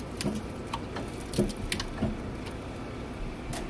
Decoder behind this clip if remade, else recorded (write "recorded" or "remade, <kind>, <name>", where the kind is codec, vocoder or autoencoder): recorded